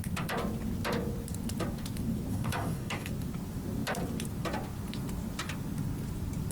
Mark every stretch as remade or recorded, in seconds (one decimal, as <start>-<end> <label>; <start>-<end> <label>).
0.0-2.3 recorded; 2.3-3.1 remade; 3.1-6.5 recorded